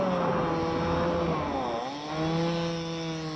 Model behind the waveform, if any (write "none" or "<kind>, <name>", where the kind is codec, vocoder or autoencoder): none